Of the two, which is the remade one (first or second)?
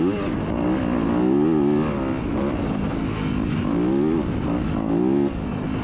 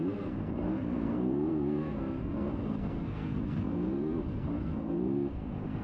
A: second